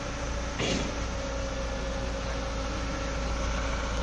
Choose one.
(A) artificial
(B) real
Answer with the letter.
B